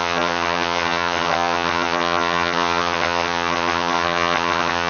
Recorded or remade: remade